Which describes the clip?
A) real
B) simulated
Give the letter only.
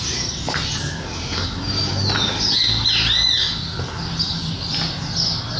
A